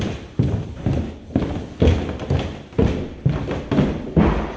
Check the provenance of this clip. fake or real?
real